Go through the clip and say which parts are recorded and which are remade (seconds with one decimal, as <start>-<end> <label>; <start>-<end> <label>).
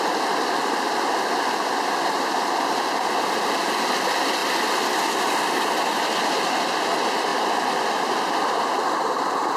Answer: 0.0-9.6 recorded